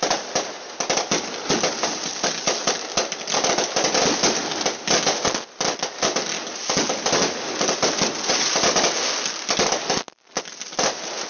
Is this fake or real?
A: real